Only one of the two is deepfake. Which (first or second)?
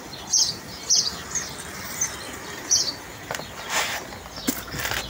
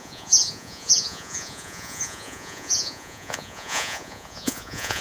second